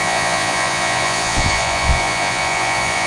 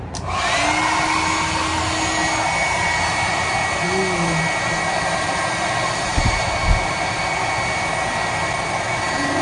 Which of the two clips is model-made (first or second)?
first